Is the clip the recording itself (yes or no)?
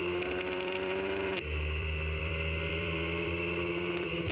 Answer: no